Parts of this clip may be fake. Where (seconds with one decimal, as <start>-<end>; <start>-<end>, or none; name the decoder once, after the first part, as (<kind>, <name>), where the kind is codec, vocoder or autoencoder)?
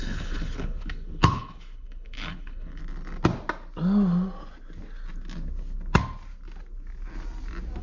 0.0-2.8 (codec, HILCodec)